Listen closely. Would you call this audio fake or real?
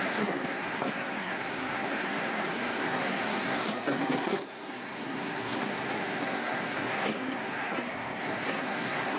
fake